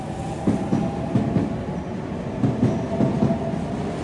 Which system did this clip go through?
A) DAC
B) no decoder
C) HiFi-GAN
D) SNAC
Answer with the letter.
B